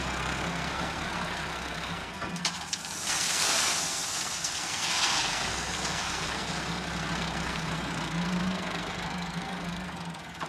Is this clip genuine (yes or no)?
no